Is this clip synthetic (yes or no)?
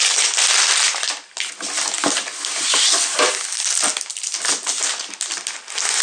no